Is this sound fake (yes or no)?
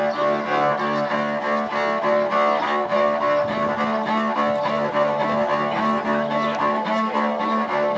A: no